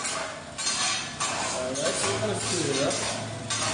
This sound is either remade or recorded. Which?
recorded